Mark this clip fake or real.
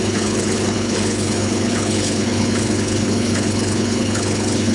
fake